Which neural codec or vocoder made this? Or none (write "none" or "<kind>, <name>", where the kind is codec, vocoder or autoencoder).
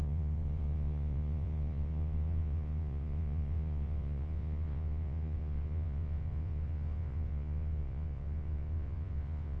vocoder, Vocos